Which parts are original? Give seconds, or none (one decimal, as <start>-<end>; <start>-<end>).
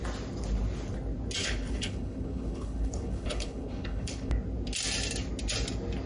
0.0-1.4; 4.3-6.1